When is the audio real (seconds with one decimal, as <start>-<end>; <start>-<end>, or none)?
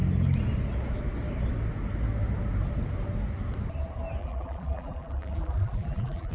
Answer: 0.0-4.2